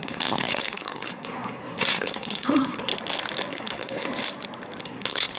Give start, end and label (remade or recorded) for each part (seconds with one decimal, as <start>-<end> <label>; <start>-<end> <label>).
0.0-2.9 remade; 2.9-3.5 recorded; 3.5-4.1 remade; 4.1-4.8 recorded; 4.8-5.4 remade